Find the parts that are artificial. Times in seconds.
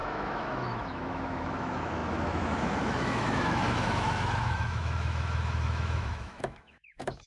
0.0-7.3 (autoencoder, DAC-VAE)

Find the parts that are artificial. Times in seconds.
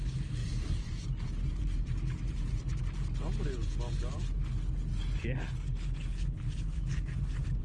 0.4-2.8 (vocoder, BigVGAN v2); 6.9-7.6